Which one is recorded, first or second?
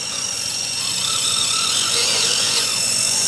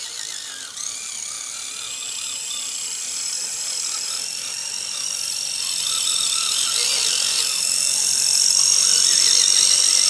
second